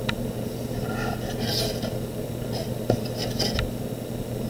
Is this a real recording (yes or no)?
yes